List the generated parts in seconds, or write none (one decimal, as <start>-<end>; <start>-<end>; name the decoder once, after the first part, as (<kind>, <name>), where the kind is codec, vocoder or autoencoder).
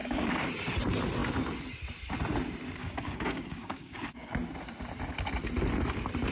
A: 0.0-0.5 (codec, DAC); 2.8-4.3